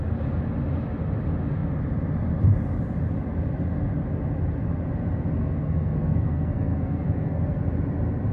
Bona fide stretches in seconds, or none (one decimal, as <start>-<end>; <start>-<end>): 0.0-5.4; 7.6-8.3